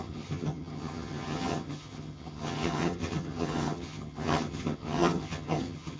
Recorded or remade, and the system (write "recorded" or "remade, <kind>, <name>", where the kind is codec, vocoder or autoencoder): remade, vocoder, HiFi-GAN